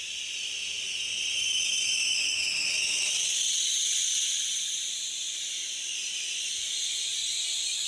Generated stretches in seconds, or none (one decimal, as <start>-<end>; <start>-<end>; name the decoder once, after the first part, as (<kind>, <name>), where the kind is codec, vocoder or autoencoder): none